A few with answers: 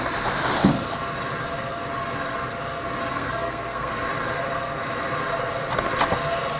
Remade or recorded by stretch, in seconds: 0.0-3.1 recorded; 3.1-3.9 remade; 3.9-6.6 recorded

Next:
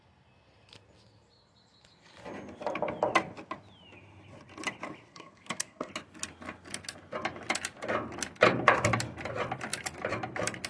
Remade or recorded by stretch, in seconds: 0.0-5.1 recorded; 5.1-5.9 remade; 5.9-10.7 recorded